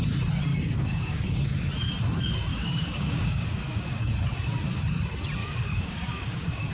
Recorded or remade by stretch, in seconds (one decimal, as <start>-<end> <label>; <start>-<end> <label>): 0.0-0.5 recorded; 0.5-1.3 remade; 1.3-2.5 recorded; 2.5-4.1 remade; 4.1-5.4 recorded; 5.4-6.7 remade